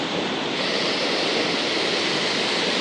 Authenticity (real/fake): fake